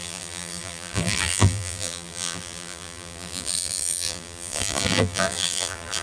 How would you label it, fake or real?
fake